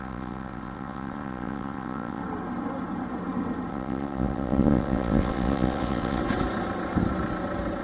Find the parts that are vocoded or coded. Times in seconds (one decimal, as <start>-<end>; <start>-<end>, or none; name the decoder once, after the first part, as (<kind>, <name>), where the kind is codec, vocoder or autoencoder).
0.0-2.2 (vocoder, WaveNeXt); 3.7-6.2